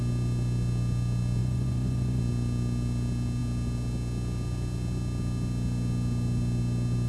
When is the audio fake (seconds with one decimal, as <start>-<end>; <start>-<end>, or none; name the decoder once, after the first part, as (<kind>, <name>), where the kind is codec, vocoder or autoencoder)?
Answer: 1.4-2.2 (vocoder, Vocos)